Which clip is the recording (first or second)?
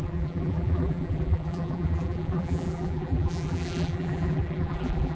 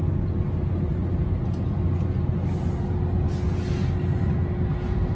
second